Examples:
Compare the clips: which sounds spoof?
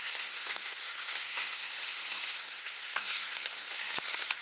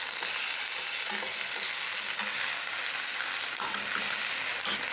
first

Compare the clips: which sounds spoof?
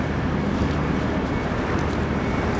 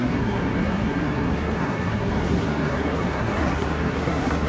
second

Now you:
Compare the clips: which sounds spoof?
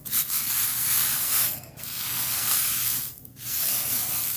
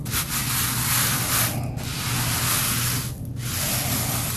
first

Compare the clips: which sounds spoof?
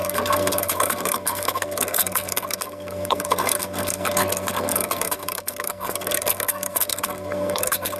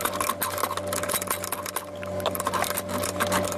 first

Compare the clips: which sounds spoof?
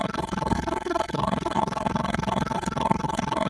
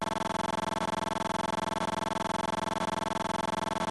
first